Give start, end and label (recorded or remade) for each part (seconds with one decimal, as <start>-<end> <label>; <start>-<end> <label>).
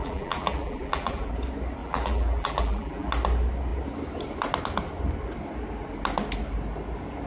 0.0-1.3 remade; 1.3-1.8 recorded; 1.8-3.1 remade; 3.1-7.3 recorded